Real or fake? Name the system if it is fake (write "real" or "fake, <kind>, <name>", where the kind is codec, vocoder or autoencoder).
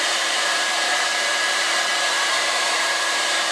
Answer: fake, vocoder, BigVGAN v2